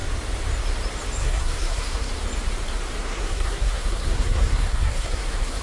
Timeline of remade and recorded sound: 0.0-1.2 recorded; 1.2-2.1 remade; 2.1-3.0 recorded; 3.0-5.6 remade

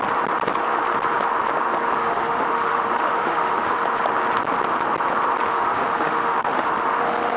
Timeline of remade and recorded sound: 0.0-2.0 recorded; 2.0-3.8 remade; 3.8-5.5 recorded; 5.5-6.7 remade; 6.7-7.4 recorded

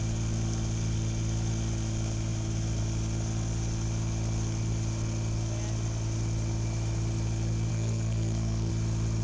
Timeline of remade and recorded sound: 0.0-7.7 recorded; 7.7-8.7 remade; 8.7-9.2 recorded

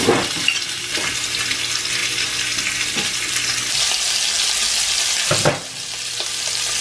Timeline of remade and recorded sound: 0.0-6.8 recorded